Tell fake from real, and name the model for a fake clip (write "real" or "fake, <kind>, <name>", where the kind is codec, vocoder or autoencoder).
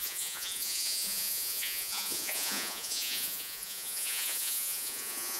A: fake, vocoder, Vocos